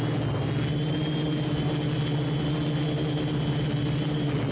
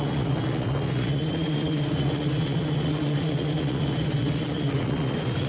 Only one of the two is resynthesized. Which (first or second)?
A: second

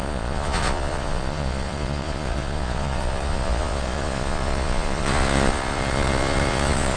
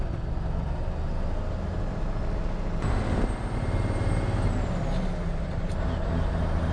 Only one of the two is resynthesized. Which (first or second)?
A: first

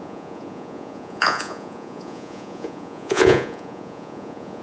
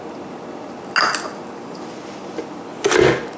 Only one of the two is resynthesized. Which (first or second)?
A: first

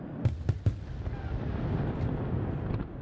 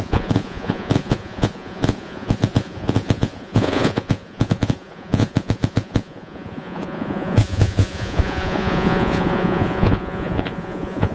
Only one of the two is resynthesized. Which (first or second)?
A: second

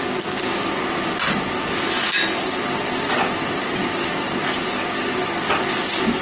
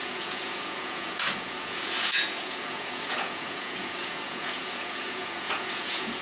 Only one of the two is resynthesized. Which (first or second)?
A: second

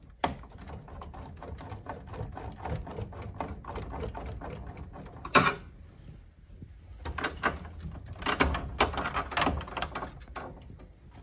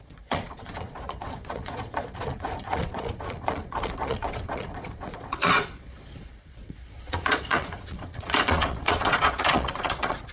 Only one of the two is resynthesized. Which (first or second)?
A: second